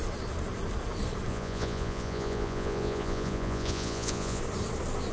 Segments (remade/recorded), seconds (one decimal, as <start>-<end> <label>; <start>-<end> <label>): 0.0-1.3 recorded; 1.3-4.4 remade; 4.4-5.1 recorded